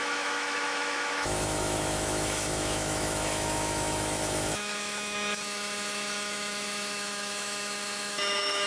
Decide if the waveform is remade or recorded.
remade